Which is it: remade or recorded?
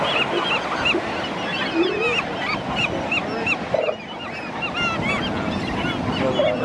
recorded